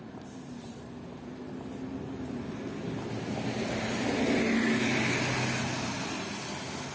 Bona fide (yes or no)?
yes